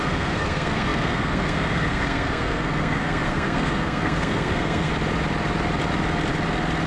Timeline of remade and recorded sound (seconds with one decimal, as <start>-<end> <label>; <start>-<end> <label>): 0.0-4.9 remade; 4.9-6.9 recorded